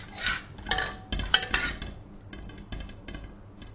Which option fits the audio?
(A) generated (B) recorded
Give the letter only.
B